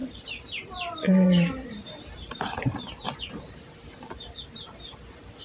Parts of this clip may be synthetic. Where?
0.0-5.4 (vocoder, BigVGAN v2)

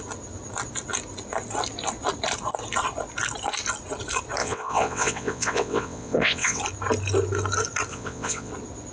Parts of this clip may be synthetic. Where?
4.4-6.6 (vocoder, WaveNeXt); 7.9-8.5

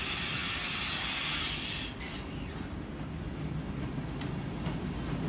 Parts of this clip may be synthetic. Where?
none

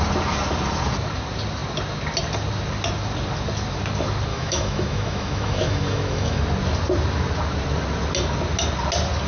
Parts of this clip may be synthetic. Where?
4.3-6.4 (autoencoder, DAC-VAE)

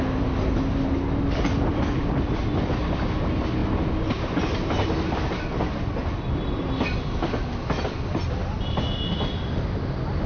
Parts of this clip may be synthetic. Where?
none

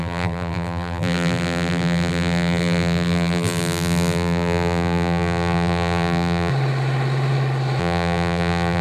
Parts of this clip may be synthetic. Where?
0.0-6.5 (vocoder, BigVGAN v2); 7.8-8.8